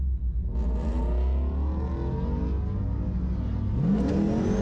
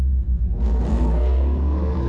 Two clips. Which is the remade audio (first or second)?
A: second